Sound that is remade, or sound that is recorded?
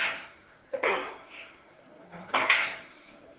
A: remade